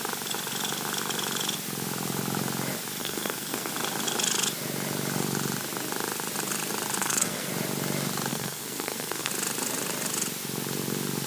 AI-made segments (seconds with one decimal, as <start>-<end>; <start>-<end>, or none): 3.0-3.7; 7.0-7.5; 8.3-9.3